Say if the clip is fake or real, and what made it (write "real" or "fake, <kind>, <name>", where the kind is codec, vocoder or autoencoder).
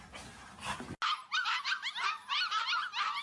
real